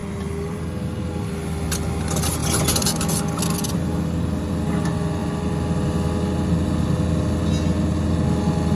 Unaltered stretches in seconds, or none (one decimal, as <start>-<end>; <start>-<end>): 0.0-8.8